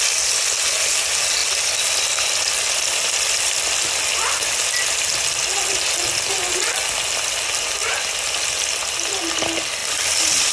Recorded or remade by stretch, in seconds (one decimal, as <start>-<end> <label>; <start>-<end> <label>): 0.0-1.4 recorded; 1.4-4.2 remade; 4.2-9.8 recorded; 9.8-10.5 remade